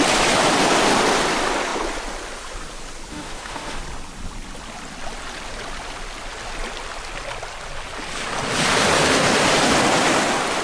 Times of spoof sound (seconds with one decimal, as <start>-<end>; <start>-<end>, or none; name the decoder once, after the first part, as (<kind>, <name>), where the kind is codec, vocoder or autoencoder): 3.1-3.8 (autoencoder, DAC-VAE)